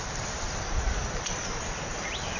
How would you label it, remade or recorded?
recorded